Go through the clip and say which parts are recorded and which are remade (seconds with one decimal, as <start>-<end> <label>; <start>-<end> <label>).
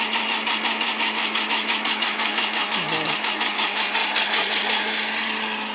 0.0-0.9 recorded; 0.9-3.6 remade; 3.6-5.7 recorded